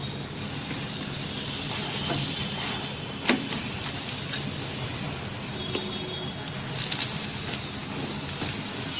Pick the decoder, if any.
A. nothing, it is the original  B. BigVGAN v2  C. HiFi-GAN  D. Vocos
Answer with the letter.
A